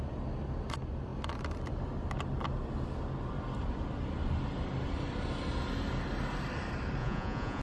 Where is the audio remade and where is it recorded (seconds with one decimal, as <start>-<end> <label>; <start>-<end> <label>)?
0.0-7.0 recorded; 7.0-7.6 remade